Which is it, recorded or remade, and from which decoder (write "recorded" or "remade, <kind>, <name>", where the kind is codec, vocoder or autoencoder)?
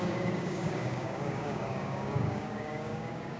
remade, codec, DAC